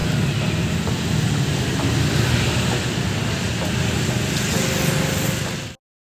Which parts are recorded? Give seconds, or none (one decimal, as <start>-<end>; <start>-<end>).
0.0-6.1